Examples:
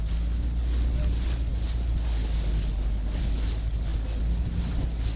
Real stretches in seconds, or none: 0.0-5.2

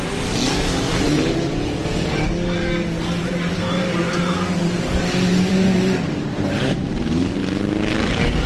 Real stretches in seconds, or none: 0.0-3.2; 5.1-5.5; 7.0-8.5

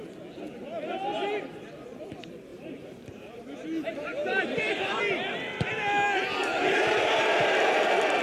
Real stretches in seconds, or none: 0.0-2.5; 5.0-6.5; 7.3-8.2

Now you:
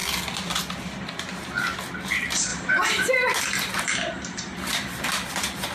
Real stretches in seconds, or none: 0.0-2.5; 3.1-5.7